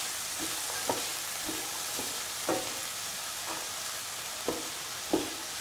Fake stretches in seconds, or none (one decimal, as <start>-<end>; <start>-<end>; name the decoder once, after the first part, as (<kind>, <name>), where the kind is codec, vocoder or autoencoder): none